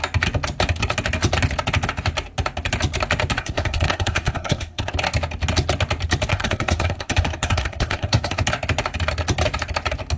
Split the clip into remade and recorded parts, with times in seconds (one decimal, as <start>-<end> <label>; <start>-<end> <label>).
0.0-3.4 recorded; 3.4-4.9 remade; 4.9-6.3 recorded; 6.3-8.4 remade; 8.4-10.2 recorded